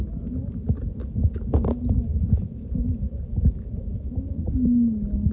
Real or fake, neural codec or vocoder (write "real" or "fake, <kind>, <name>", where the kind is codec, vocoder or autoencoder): real